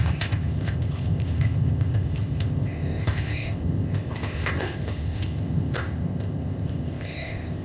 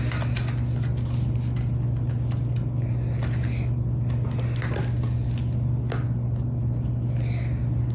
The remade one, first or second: first